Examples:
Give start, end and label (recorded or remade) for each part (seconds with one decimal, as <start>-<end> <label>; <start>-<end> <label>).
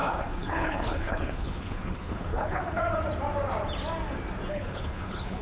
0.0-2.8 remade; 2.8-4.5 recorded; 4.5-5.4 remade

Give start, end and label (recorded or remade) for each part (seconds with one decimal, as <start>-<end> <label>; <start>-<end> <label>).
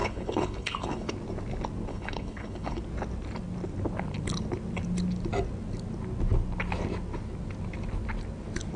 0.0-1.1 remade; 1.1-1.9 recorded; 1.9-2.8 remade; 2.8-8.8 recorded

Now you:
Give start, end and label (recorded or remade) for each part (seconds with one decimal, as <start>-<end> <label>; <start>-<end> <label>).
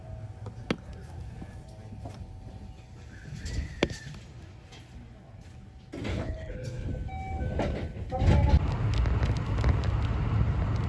0.0-6.1 recorded; 6.1-6.9 remade; 6.9-10.9 recorded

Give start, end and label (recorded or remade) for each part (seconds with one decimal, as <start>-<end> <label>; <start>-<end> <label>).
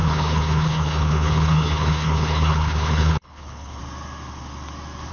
0.0-3.8 remade; 3.8-5.1 recorded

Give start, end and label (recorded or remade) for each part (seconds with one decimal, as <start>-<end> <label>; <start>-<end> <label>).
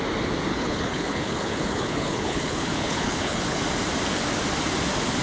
0.0-0.5 recorded; 0.5-3.6 remade; 3.6-5.2 recorded